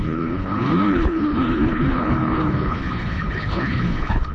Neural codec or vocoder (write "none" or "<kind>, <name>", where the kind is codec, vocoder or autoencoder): codec, HILCodec